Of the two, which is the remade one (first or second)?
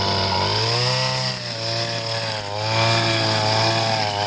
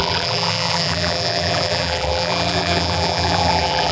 second